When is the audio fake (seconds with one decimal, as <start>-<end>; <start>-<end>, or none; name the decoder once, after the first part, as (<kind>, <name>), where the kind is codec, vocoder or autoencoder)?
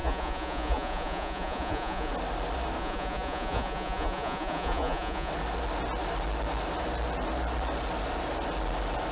0.0-2.1 (vocoder, Vocos); 2.8-5.3